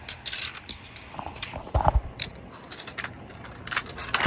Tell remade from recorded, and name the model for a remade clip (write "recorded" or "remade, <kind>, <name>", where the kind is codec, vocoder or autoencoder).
remade, vocoder, BigVGAN v2